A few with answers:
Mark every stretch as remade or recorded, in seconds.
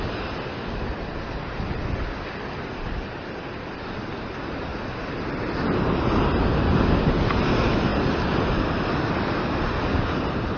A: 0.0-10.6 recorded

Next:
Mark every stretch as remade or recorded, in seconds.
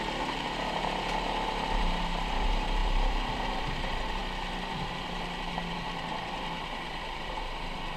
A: 0.0-4.2 remade; 4.2-4.7 recorded; 4.7-8.0 remade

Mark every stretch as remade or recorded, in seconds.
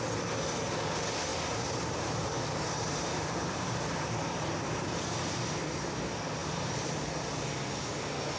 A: 0.0-1.3 recorded; 1.3-5.4 remade; 5.4-6.4 recorded; 6.4-7.3 remade; 7.3-8.4 recorded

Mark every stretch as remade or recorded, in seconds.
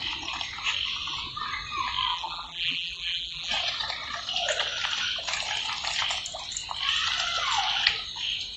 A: 0.0-2.1 recorded; 2.1-3.5 remade; 3.5-8.6 recorded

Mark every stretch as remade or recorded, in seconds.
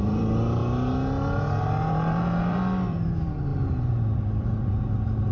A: 0.0-0.6 remade; 0.6-1.9 recorded; 1.9-5.3 remade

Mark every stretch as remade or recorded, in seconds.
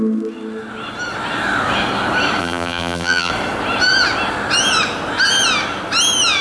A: 0.0-2.4 recorded; 2.4-3.3 remade; 3.3-6.4 recorded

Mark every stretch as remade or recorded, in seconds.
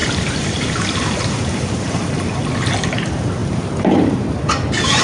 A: 0.0-5.0 remade